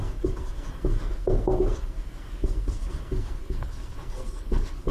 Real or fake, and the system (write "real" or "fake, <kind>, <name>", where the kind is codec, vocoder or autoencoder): fake, codec, SNAC